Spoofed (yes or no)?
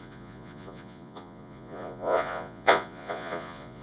yes